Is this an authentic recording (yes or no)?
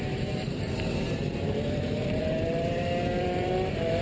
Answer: no